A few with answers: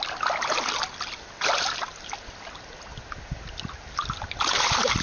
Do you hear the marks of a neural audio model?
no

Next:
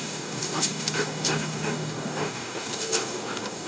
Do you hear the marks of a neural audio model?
yes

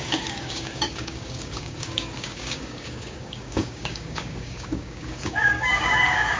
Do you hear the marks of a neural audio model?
yes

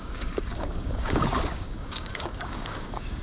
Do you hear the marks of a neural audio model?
yes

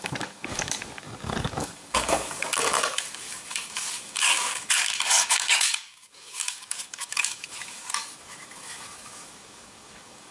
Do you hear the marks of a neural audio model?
yes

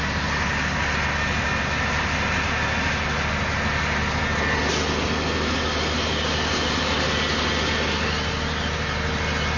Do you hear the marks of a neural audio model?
no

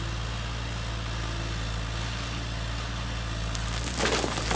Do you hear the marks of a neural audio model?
no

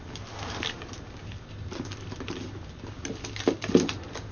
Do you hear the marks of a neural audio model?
no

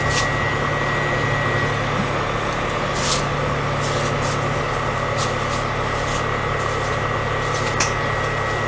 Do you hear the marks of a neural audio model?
no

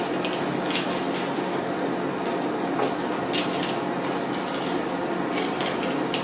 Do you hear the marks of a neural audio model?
no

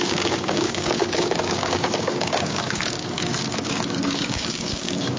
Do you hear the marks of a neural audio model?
yes